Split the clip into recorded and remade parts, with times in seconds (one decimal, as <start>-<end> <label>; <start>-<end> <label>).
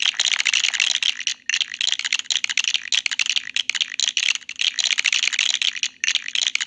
0.0-6.7 recorded